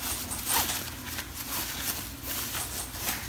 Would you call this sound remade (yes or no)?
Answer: no